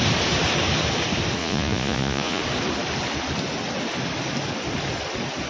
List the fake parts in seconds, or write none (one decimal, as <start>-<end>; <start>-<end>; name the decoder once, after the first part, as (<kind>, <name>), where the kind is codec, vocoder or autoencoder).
1.4-2.4 (vocoder, Vocos)